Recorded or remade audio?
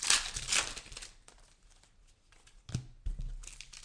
recorded